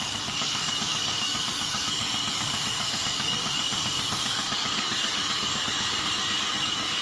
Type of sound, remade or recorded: remade